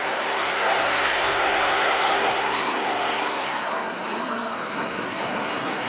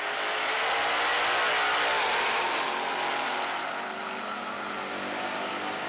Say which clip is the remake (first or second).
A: first